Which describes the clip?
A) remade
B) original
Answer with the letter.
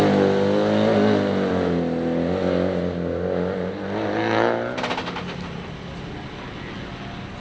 B